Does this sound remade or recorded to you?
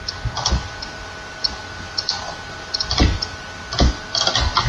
recorded